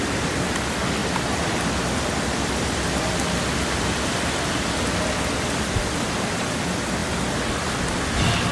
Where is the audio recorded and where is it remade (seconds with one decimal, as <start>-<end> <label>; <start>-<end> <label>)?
0.0-8.5 recorded